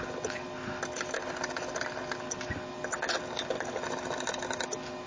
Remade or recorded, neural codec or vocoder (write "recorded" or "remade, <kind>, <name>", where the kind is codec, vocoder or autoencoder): recorded